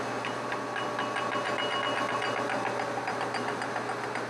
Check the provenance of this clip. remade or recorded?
recorded